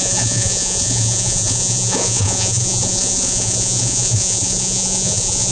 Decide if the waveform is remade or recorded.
remade